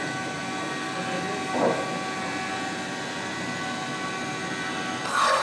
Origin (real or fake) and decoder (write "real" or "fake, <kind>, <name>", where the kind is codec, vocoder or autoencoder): real